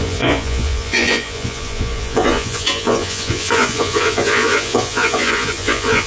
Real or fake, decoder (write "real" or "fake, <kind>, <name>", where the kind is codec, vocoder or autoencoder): fake, vocoder, Vocos